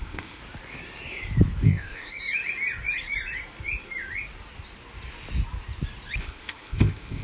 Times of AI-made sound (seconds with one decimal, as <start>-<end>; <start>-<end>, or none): 0.0-0.4; 1.6-2.1; 6.2-7.2